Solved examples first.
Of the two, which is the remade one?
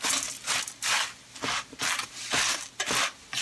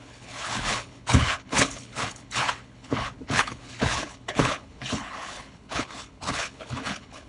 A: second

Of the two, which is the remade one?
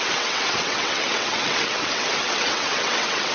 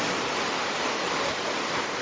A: first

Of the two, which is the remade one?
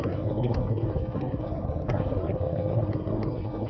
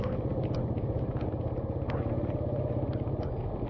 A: first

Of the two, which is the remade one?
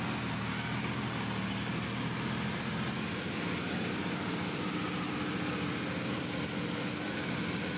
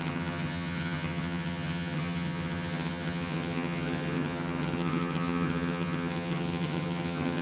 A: second